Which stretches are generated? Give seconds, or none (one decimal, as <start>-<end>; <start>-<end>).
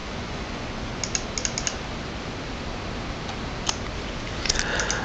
0.0-1.0